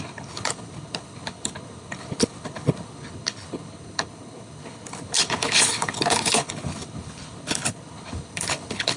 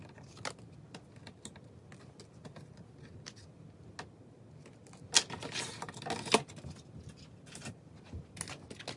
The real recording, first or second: second